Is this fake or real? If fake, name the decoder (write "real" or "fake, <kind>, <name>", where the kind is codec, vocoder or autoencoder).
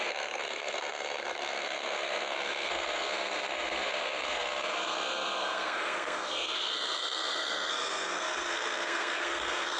fake, codec, SNAC